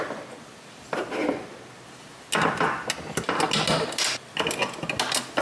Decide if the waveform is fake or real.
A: real